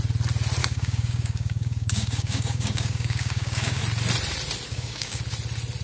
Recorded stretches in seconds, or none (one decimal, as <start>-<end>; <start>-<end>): 0.0-0.6; 3.8-4.7; 5.2-5.8